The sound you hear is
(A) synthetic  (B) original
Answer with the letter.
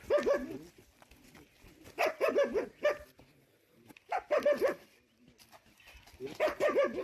B